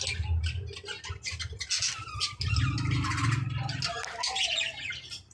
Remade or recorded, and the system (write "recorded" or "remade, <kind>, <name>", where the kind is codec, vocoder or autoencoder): recorded